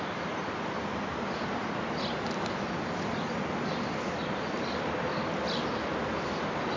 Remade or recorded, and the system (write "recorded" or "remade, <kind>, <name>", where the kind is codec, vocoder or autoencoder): recorded